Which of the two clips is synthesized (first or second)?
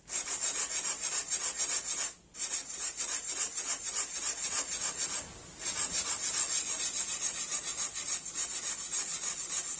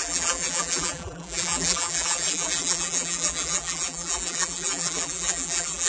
second